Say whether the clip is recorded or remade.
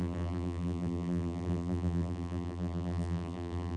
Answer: remade